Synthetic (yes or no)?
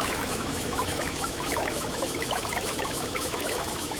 yes